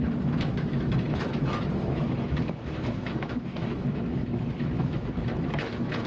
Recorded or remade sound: remade